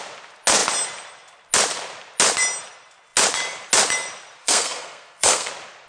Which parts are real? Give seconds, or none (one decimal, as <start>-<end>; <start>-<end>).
0.0-4.4; 5.5-5.9